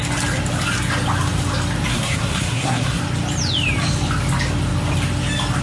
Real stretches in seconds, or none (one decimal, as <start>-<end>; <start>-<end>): 0.0-1.9; 3.0-5.6